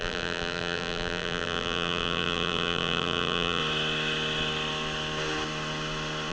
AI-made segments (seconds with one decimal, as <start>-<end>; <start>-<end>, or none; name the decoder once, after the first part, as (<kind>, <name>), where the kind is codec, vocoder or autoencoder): 0.0-3.6 (vocoder, BigVGAN v2)